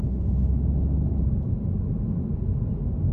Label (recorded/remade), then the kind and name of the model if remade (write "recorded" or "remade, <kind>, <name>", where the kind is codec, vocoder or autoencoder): recorded